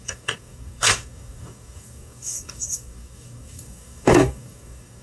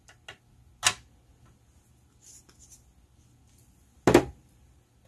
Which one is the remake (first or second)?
first